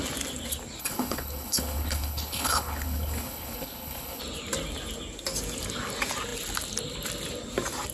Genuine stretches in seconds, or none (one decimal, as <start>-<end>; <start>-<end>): 0.0-0.8; 4.2-7.9